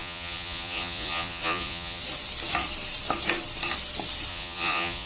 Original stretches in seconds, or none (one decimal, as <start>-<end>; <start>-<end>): 2.0-4.3